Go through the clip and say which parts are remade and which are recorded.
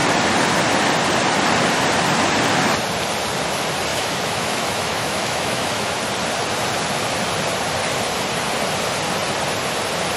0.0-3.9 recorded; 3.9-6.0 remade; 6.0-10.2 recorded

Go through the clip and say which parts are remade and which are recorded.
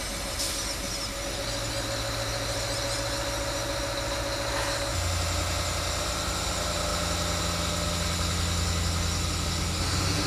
0.0-10.3 recorded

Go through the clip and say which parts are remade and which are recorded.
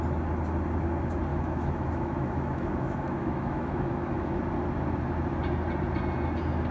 0.0-1.3 recorded; 1.3-4.4 remade; 4.4-6.7 recorded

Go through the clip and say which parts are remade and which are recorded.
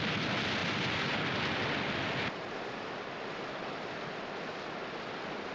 0.0-5.5 recorded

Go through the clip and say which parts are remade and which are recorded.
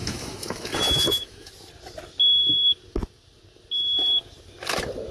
0.0-1.5 remade; 1.5-5.1 recorded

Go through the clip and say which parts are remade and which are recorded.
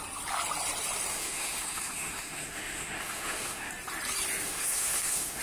0.0-1.1 recorded; 1.1-3.7 remade; 3.7-4.4 recorded; 4.4-5.4 remade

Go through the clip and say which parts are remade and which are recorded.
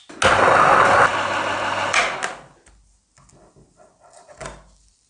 0.0-5.1 recorded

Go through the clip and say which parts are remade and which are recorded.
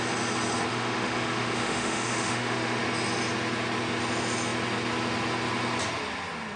0.0-0.7 recorded; 0.7-2.8 remade; 2.8-6.6 recorded